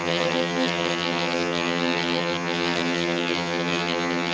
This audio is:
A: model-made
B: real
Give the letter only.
A